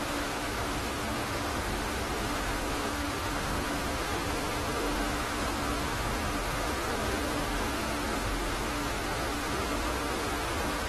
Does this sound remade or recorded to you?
remade